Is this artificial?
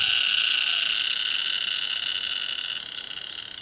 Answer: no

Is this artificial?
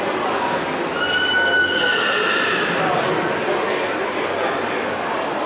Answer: no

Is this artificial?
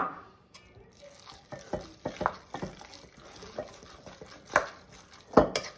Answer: no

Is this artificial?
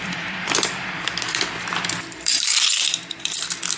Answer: yes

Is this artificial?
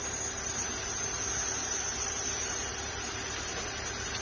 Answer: no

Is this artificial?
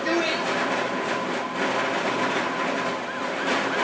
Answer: no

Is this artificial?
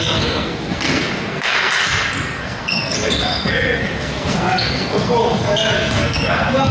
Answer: yes